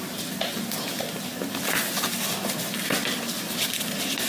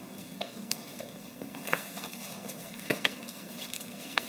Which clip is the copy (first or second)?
second